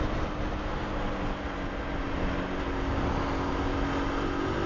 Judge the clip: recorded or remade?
recorded